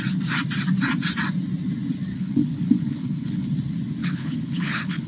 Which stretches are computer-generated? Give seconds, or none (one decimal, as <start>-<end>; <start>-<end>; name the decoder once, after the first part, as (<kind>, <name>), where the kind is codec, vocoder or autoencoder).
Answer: 2.1-3.5 (codec, HILCodec); 4.0-5.1